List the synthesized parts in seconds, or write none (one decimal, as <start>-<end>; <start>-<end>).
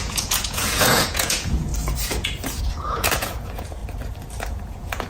0.0-1.7; 2.6-3.8; 4.4-5.1